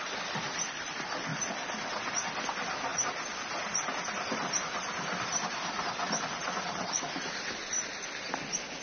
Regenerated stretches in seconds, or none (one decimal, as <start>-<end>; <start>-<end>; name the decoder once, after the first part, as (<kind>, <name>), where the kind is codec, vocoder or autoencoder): 0.0-1.3 (vocoder, BigVGAN v2); 2.1-2.9; 4.1-7.6